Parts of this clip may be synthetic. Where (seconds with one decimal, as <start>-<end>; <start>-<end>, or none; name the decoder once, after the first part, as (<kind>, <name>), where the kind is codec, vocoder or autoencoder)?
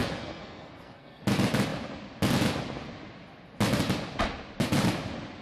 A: 0.0-1.2 (codec, SNAC)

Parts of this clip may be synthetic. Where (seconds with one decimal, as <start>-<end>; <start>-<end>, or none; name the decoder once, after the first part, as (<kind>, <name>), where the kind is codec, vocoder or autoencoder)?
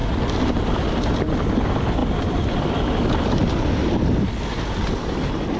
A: none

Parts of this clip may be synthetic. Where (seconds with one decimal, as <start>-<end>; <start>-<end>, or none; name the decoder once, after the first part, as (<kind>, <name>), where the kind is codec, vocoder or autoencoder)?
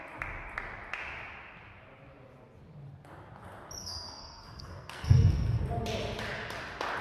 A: 3.8-5.6 (codec, SNAC)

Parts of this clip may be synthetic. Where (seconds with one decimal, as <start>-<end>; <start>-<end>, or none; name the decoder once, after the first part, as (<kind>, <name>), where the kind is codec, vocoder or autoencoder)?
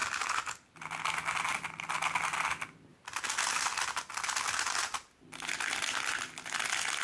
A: none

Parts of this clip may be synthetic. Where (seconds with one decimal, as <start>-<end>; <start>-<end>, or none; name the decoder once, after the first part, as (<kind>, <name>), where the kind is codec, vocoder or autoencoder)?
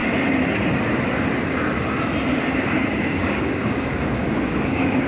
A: 2.3-5.1 (codec, DAC)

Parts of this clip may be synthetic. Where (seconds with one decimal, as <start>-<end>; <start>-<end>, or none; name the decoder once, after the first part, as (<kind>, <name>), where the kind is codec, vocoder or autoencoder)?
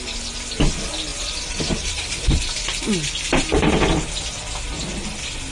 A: 1.1-2.4 (vocoder, BigVGAN v2)